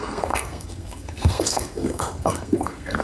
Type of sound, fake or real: fake